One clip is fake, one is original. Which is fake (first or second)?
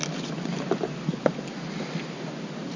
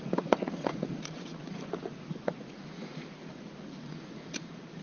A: second